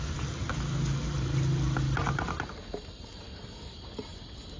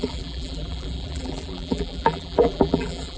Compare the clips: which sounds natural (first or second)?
first